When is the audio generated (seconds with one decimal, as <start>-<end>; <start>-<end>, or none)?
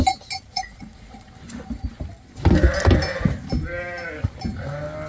0.5-1.3